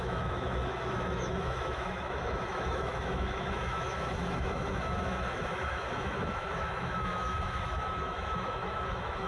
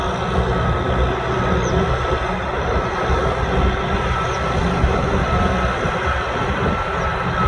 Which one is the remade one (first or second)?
first